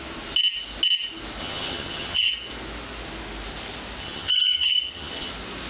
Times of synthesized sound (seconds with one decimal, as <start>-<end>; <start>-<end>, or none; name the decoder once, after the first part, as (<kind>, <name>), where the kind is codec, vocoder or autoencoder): 1.4-2.3 (vocoder, HiFi-GAN); 4.0-5.3